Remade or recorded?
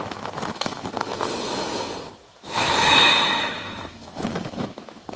remade